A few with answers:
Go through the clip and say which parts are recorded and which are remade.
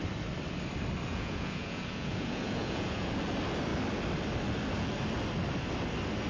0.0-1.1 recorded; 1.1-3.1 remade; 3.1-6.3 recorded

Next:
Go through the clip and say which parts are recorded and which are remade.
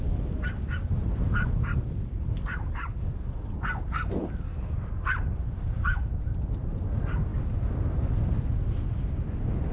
0.0-9.7 recorded